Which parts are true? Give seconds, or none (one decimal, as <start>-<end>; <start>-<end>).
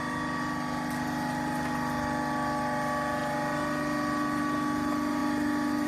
0.0-5.9